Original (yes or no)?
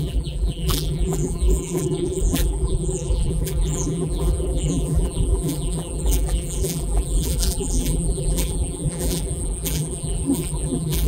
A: no